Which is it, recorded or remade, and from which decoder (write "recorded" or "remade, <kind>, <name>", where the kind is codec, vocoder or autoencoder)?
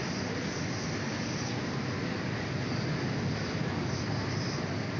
recorded